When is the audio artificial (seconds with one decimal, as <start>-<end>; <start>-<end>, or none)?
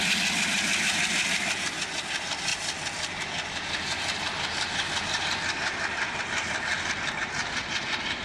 2.5-7.1